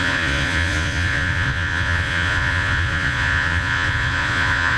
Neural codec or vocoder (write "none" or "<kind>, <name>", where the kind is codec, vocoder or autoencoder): vocoder, Vocos